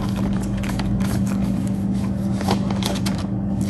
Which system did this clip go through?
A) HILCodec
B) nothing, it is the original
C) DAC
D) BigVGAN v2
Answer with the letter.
C